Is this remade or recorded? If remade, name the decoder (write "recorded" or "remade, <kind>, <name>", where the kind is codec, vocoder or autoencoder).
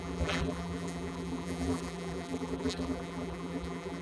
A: remade, vocoder, BigVGAN v2